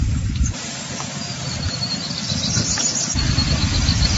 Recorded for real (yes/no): no